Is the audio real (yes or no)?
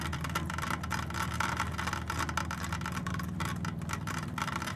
yes